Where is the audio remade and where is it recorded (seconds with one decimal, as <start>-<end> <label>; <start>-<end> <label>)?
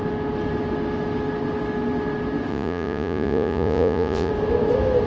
0.0-2.5 recorded; 2.5-4.3 remade; 4.3-5.1 recorded